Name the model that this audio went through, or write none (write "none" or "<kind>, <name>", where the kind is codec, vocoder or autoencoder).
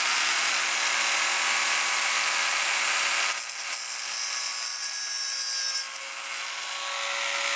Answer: none